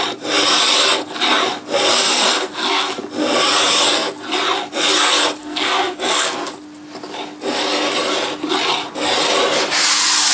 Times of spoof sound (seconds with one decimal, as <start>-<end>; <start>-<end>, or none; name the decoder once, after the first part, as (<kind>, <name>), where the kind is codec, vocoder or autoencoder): 1.9-2.9 (codec, SNAC); 5.4-6.5